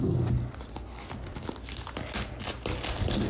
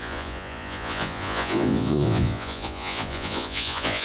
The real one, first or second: first